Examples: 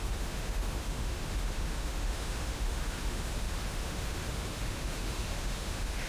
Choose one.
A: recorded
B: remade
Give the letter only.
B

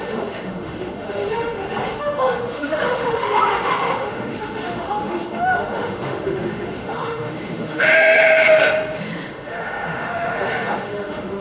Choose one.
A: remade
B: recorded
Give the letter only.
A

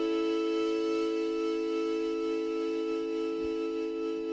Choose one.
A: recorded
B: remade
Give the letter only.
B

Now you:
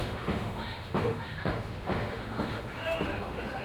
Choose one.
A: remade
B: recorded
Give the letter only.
A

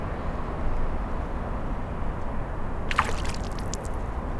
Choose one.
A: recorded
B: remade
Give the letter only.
A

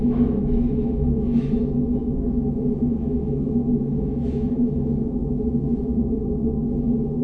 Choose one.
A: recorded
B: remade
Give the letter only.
B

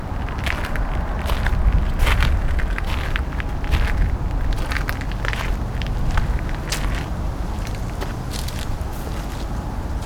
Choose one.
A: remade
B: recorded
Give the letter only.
B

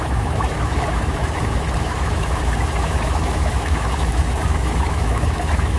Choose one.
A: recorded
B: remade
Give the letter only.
B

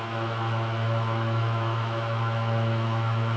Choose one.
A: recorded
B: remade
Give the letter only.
B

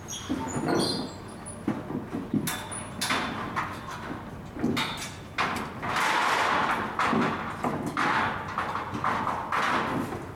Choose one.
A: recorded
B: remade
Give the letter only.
A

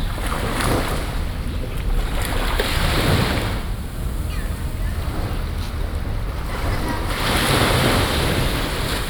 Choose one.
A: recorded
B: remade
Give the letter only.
A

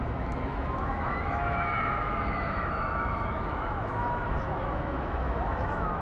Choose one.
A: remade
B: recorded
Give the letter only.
A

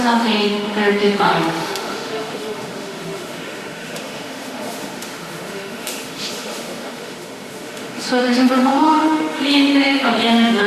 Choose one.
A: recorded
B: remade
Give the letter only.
B